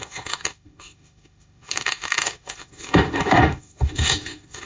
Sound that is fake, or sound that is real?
fake